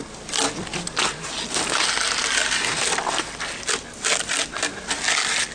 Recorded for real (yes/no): yes